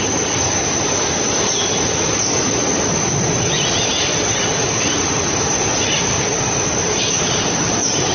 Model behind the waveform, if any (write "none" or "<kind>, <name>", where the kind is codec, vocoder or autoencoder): vocoder, BigVGAN v2